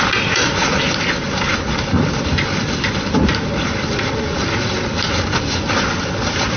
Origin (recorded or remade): recorded